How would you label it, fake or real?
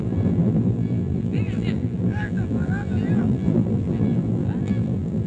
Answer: fake